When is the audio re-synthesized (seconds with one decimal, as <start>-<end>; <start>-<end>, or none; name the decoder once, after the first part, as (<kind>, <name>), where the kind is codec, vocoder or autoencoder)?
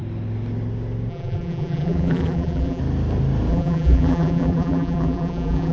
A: 1.1-2.8 (vocoder, BigVGAN v2); 3.5-5.7